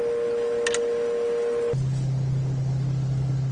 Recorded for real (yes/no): yes